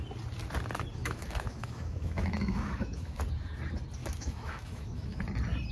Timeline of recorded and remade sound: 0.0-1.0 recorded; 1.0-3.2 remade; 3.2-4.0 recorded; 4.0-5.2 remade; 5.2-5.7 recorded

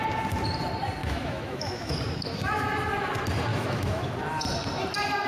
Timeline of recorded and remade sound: 0.0-1.0 recorded; 1.0-1.9 remade; 1.9-3.5 recorded; 3.5-4.1 remade; 4.1-5.3 recorded

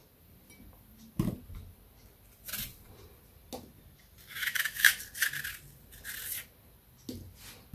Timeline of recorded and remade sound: 0.0-4.4 recorded; 4.4-5.0 remade; 5.0-7.7 recorded

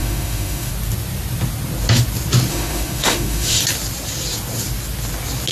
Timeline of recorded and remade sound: 0.0-0.7 remade; 0.7-2.5 recorded; 2.5-3.6 remade; 3.6-5.5 recorded

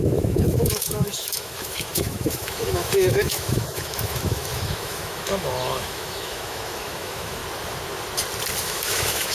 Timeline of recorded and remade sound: 0.0-7.4 remade; 7.4-8.6 recorded; 8.6-9.3 remade

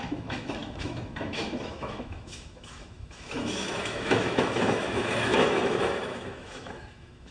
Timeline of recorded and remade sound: 0.0-7.3 remade

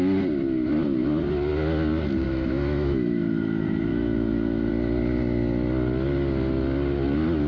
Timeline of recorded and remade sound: 0.0-2.2 recorded; 2.2-3.2 remade; 3.2-3.9 recorded; 3.9-4.7 remade; 4.7-7.5 recorded

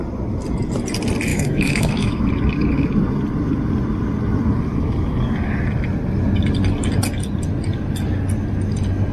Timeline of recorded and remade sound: 0.0-1.3 recorded; 1.3-2.3 remade; 2.3-9.1 recorded